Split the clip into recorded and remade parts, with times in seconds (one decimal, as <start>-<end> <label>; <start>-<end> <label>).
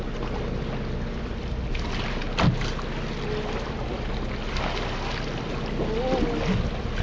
0.0-7.0 recorded